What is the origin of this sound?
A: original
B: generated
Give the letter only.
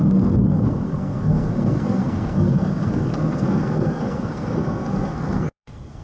B